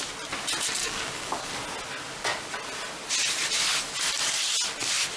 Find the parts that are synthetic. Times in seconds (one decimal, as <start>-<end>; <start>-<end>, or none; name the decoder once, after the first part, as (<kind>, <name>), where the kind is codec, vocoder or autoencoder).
0.8-1.5 (codec, DAC)